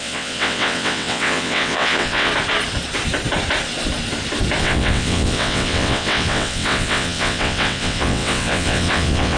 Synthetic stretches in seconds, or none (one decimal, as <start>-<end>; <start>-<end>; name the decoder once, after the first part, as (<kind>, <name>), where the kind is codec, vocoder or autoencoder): 0.0-2.3 (vocoder, WaveNeXt); 4.6-9.4